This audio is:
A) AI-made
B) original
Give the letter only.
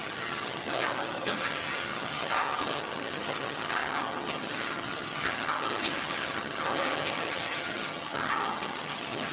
A